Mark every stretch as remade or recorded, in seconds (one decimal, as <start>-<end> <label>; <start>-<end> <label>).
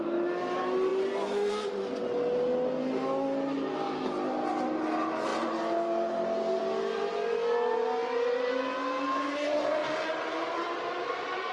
0.0-11.5 recorded